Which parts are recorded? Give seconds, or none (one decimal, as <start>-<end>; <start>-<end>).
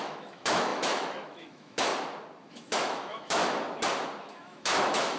1.9-2.5; 3.4-4.2